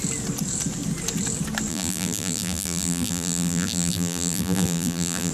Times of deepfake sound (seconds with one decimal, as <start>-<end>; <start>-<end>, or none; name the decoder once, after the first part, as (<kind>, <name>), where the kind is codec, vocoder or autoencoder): 1.7-5.3 (vocoder, BigVGAN v2)